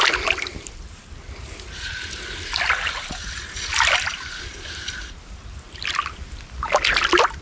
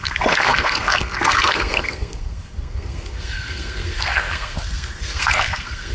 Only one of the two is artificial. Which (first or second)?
second